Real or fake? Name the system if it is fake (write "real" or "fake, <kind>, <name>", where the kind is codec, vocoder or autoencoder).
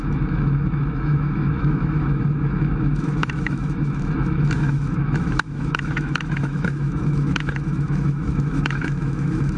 fake, autoencoder, DAC-VAE